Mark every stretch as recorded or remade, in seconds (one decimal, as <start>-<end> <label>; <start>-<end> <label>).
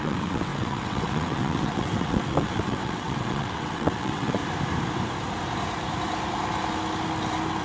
0.0-4.4 remade; 4.4-7.6 recorded